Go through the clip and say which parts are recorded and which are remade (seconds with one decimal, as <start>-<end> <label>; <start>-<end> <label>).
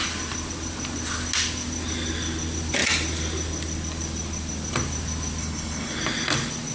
0.0-5.4 recorded; 5.4-6.0 remade; 6.0-6.7 recorded